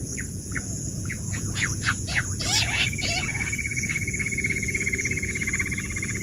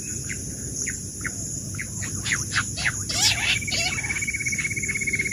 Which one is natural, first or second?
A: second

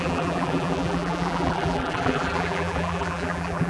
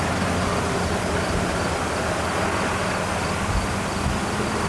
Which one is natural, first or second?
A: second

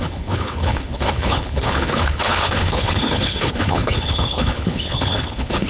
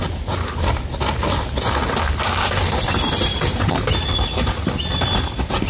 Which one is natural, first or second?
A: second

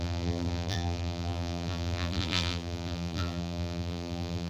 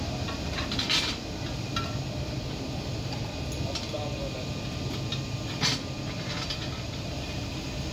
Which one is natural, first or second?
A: second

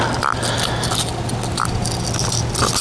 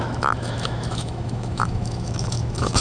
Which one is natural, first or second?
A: first